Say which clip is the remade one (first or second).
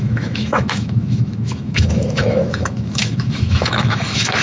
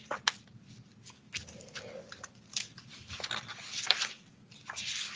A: first